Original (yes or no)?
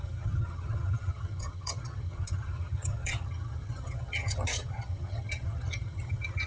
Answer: no